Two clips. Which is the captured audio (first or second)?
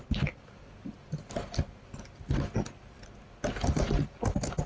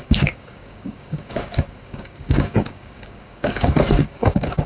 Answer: first